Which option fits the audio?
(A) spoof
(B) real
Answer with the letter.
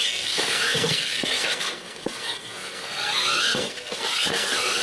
A